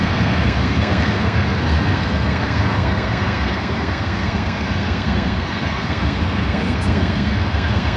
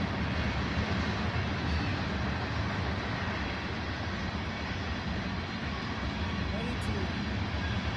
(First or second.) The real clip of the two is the second